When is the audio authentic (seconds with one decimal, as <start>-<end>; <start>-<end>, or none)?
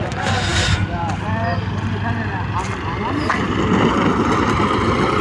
0.0-5.2